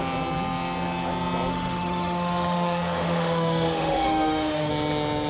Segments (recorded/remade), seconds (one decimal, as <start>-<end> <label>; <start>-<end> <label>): 0.0-1.5 recorded; 1.5-4.7 remade; 4.7-5.3 recorded